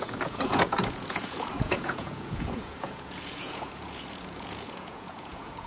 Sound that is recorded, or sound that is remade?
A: remade